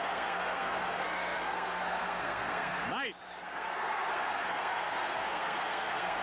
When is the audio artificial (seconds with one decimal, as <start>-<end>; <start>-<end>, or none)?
0.0-2.8; 3.4-6.2